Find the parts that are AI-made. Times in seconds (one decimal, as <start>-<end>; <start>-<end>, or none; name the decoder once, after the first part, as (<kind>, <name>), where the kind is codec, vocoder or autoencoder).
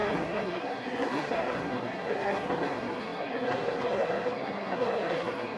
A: 0.0-5.6 (codec, SNAC)